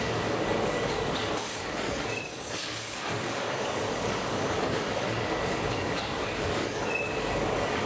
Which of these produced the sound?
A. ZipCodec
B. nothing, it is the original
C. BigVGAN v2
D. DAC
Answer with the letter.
D